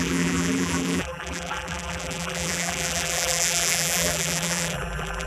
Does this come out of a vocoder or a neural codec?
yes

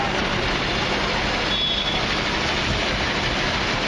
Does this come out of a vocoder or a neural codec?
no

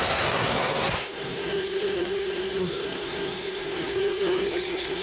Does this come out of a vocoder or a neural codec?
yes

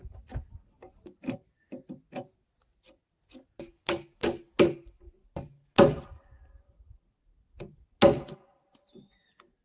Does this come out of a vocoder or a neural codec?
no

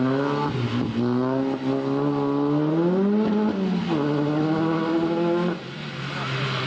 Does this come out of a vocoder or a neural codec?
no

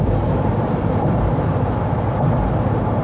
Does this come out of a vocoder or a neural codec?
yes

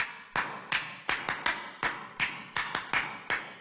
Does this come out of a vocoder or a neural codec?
no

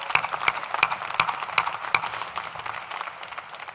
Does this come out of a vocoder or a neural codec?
no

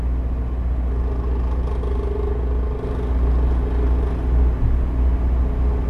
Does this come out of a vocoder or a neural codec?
no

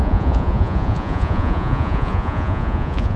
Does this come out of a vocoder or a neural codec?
yes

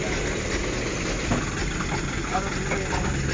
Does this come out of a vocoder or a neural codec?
no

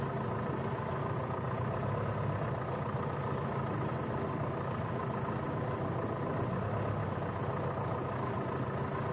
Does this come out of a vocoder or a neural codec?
no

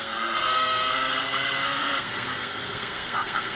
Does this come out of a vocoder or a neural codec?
yes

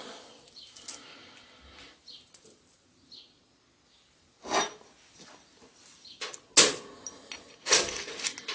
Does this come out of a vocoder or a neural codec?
no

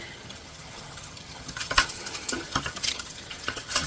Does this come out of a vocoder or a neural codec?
yes